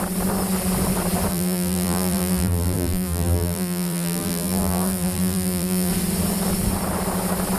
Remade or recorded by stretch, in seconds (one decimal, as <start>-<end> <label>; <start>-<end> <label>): 0.0-1.3 recorded; 1.3-5.9 remade; 5.9-7.6 recorded